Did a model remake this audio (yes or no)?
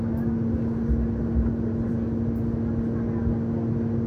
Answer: no